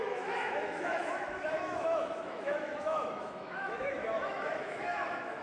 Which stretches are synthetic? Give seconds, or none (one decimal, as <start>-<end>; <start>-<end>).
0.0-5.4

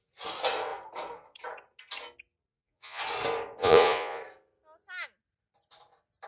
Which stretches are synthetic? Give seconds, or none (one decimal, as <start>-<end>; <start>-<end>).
2.5-3.0; 3.6-4.2

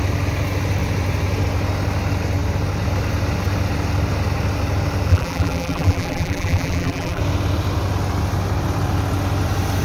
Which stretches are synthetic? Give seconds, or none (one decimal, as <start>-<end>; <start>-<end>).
5.1-7.2

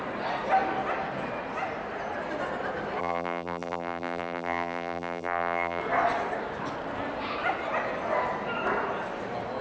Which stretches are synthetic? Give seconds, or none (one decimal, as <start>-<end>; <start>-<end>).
3.0-5.8

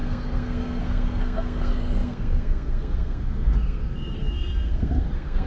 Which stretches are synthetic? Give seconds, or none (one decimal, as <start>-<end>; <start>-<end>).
0.0-5.5

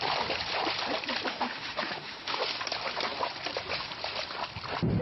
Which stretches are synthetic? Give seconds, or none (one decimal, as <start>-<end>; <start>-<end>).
1.3-2.4

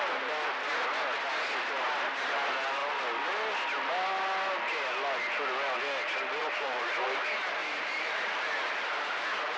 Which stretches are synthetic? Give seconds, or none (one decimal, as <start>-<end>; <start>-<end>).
6.4-6.9; 7.6-9.6